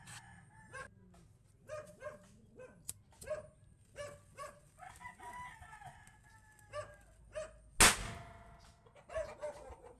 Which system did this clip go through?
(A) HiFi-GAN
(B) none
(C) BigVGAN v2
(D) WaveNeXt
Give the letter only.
B